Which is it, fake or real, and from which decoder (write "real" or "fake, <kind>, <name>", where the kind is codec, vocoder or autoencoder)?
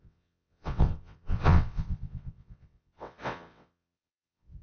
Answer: fake, vocoder, WaveNeXt